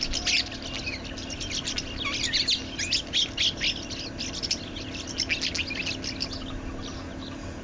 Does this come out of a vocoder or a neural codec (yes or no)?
no